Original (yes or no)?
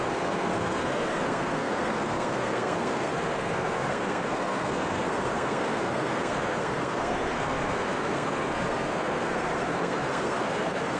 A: no